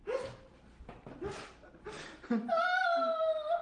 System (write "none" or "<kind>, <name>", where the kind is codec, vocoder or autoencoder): none